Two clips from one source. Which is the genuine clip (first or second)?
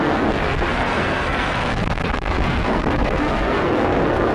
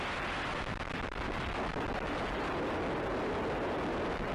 second